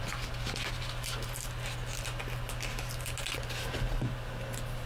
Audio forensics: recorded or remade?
recorded